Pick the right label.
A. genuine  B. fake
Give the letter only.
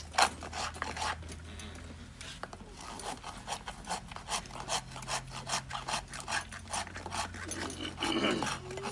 A